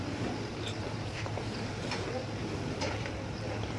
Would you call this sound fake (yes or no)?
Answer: yes